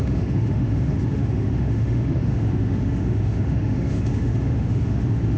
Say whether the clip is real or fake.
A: fake